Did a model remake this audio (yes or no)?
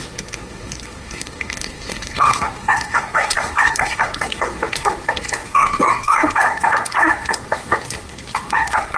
yes